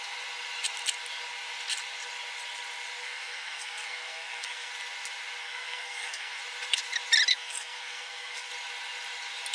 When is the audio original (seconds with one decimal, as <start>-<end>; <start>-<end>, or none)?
0.0-3.0; 4.7-5.4; 6.4-7.3; 8.5-9.5

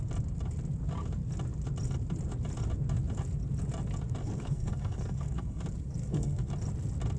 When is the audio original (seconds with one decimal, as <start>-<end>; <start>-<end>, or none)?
0.0-4.2; 5.6-6.0; 6.5-7.2

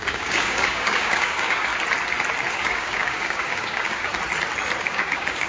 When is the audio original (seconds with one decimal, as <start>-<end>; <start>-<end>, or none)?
1.7-2.5; 4.1-4.8

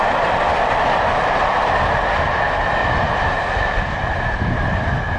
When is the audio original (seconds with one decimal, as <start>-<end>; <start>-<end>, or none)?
0.0-2.8; 4.4-5.2

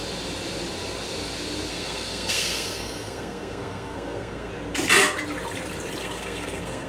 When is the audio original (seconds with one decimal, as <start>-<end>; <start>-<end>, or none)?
0.0-1.7; 4.5-6.0

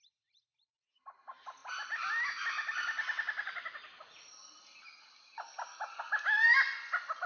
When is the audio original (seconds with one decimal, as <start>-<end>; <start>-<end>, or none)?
0.0-7.3

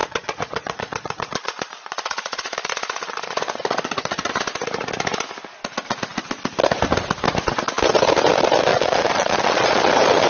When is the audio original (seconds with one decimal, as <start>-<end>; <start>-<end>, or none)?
4.3-8.7; 9.8-10.3

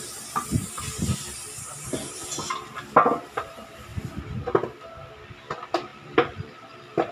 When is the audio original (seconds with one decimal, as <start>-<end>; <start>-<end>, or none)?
0.0-0.5; 2.8-5.9